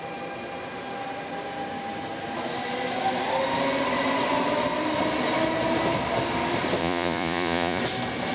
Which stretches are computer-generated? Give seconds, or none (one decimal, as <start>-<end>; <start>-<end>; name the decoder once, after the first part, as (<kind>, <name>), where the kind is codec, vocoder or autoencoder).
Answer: 6.8-7.8 (vocoder, Vocos)